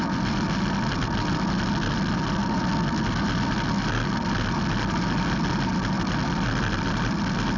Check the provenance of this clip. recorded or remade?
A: recorded